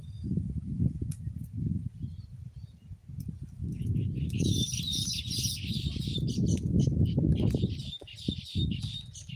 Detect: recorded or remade recorded